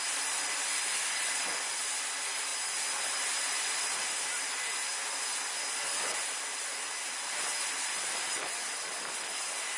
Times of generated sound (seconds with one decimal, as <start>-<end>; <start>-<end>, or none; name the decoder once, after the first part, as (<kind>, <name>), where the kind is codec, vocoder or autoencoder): none